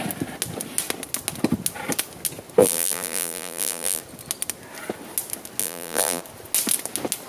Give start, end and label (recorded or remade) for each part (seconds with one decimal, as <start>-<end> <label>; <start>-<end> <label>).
0.0-2.6 recorded; 2.6-4.0 remade; 4.0-5.6 recorded; 5.6-6.2 remade; 6.2-7.3 recorded